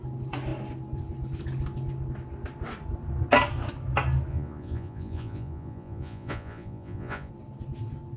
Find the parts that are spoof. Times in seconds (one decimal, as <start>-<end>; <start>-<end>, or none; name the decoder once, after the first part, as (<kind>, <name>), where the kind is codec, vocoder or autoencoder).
4.3-7.3 (vocoder, Vocos)